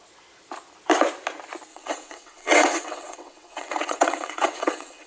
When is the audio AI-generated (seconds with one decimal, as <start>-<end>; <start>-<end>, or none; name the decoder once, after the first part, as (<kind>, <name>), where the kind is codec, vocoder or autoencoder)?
1.7-5.1 (vocoder, WaveNeXt)